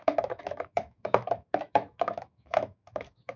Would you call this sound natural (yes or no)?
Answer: no